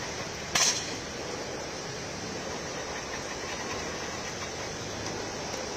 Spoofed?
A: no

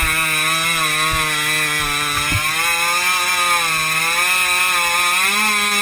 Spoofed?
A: no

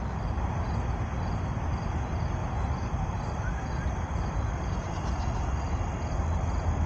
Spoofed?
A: no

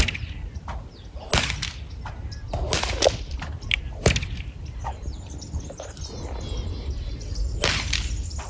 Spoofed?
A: no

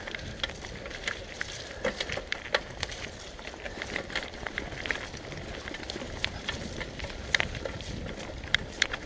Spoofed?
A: yes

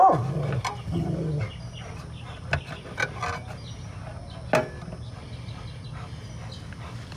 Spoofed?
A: no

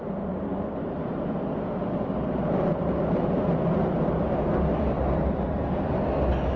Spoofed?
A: no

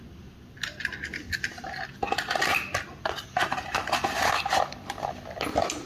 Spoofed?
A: no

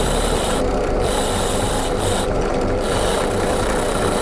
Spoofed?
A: yes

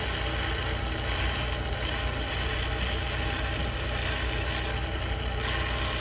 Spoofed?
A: no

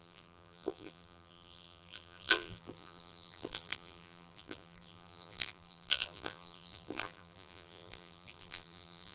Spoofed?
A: yes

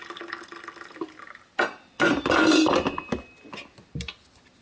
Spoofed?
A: no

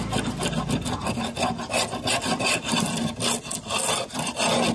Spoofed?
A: no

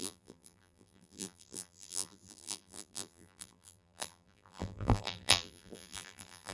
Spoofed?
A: yes